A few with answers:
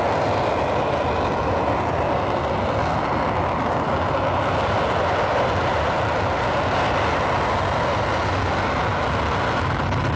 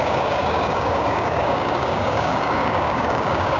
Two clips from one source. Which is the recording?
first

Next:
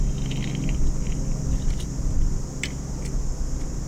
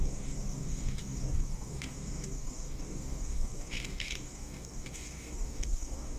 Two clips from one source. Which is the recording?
first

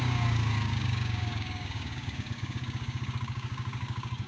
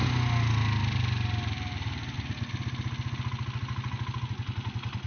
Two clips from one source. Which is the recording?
second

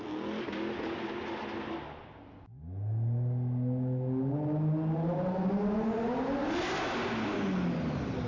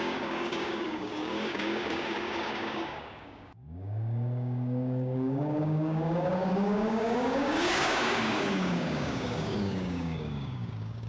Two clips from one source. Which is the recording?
first